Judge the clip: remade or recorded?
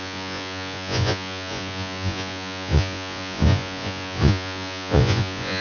remade